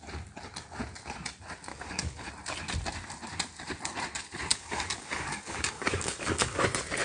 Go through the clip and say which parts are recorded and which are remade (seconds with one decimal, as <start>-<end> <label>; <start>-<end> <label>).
0.0-1.7 recorded; 1.7-2.3 remade; 2.3-4.5 recorded; 4.5-6.6 remade; 6.6-7.0 recorded